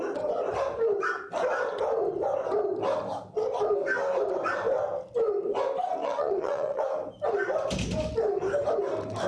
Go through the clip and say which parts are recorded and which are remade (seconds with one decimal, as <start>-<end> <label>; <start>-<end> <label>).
0.0-6.0 recorded; 6.0-6.8 remade; 6.8-9.3 recorded